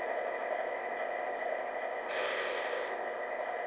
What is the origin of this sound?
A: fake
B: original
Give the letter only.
A